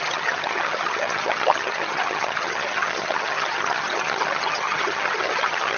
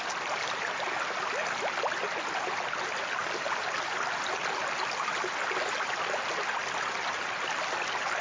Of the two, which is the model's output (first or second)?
first